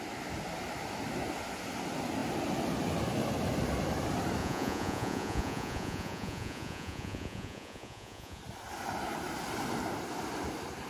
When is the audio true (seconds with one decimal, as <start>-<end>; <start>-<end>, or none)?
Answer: 0.0-4.4; 8.4-10.9